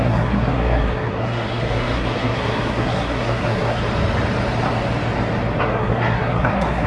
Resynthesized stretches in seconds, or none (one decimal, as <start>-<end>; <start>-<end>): 0.0-3.8; 5.6-6.9